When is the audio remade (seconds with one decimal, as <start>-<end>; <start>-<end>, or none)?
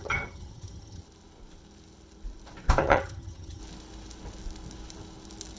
0.0-1.0; 2.8-3.6